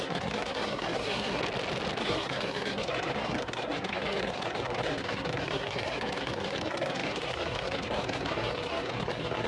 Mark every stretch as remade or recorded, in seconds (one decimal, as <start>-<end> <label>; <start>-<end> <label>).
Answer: 0.0-1.4 remade; 1.4-2.0 recorded; 2.0-9.5 remade